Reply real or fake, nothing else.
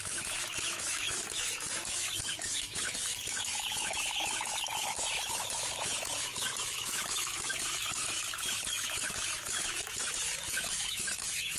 fake